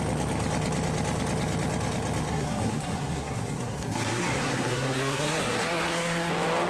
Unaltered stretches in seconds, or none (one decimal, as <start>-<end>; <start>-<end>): 0.0-2.3; 6.3-6.7